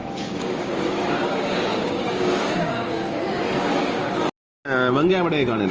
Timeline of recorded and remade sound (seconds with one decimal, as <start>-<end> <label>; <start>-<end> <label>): 0.0-3.4 remade; 3.4-3.8 recorded; 3.8-4.3 remade; 4.3-5.7 recorded